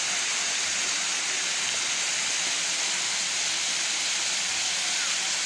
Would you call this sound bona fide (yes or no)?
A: yes